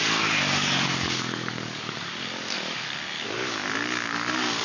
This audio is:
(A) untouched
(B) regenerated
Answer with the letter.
B